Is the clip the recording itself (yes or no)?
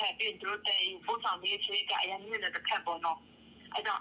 no